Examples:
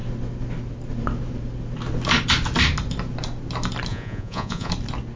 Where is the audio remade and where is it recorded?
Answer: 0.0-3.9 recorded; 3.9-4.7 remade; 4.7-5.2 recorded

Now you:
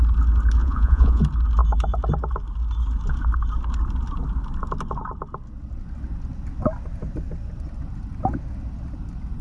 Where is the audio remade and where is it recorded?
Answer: 0.0-0.6 recorded; 0.6-1.2 remade; 1.2-9.4 recorded

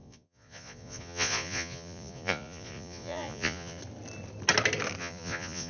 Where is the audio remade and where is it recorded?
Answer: 0.0-3.8 remade; 3.8-5.0 recorded; 5.0-5.7 remade

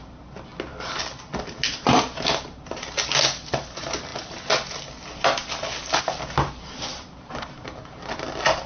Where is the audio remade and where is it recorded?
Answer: 0.0-8.7 recorded

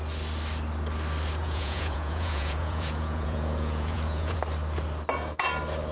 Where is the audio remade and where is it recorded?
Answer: 0.0-1.4 recorded; 1.4-4.4 remade; 4.4-5.9 recorded